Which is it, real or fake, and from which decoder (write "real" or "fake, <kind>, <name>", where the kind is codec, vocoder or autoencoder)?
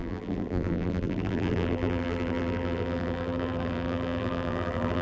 fake, vocoder, BigVGAN v2